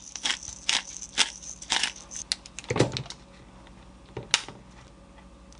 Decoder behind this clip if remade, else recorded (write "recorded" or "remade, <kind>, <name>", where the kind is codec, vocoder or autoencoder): recorded